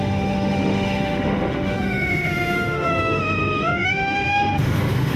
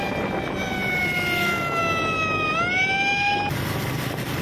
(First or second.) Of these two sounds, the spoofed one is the first